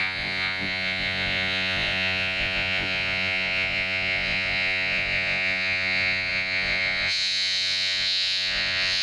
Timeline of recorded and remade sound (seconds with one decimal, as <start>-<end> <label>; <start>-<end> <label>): 0.0-9.0 remade